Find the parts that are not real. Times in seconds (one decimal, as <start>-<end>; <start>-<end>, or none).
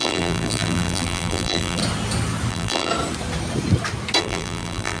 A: 0.0-1.8; 2.5-2.9; 4.2-5.0